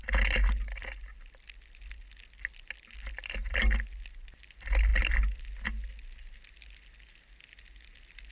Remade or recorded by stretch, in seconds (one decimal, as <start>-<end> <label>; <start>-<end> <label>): 0.0-8.3 recorded